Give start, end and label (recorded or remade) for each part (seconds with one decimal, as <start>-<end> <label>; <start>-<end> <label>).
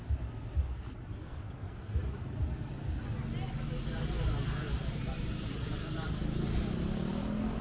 0.0-1.1 recorded; 1.1-1.9 remade; 1.9-7.6 recorded